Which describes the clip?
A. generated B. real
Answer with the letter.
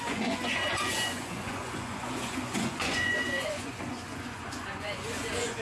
A